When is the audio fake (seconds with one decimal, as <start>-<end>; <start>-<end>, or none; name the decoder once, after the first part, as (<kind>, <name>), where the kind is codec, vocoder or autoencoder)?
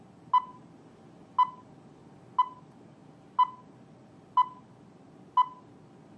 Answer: none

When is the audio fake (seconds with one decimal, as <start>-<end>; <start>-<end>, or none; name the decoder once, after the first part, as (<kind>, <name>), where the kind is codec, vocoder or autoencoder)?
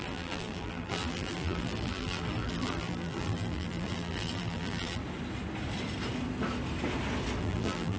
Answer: 0.0-5.0 (vocoder, BigVGAN v2); 7.4-8.0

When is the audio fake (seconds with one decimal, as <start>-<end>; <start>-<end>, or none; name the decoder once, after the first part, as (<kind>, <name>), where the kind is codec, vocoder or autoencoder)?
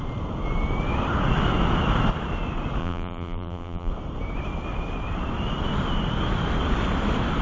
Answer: 2.8-3.9 (vocoder, BigVGAN v2)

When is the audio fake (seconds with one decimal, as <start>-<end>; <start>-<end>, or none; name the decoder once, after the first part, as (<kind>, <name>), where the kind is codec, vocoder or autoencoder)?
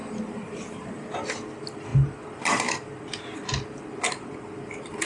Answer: 0.0-1.3 (vocoder, BigVGAN v2)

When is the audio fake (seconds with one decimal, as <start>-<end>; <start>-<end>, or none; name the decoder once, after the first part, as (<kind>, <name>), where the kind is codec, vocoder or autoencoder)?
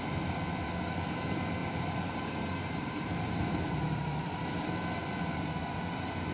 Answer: 1.6-4.6 (vocoder, BigVGAN v2)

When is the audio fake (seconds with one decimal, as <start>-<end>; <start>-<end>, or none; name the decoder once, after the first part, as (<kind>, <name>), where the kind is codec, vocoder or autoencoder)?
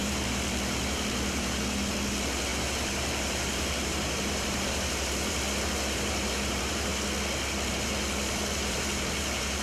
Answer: 0.0-6.9 (vocoder, BigVGAN v2); 7.7-9.6